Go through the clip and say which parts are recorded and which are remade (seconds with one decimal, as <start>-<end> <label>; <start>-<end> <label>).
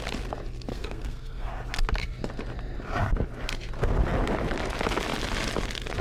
0.0-0.7 recorded; 0.7-1.5 remade; 1.5-6.0 recorded